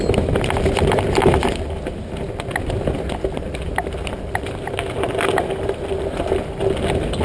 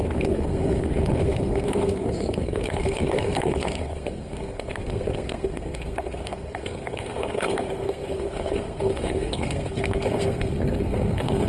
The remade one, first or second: second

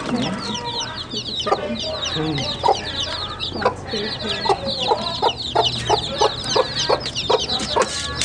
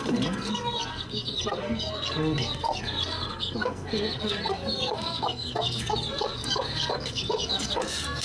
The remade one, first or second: second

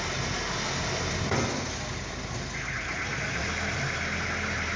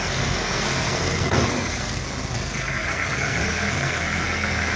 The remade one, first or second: second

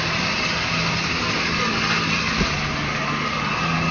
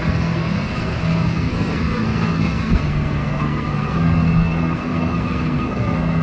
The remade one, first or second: second